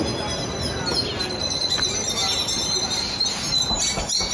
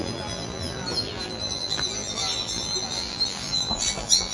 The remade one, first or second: second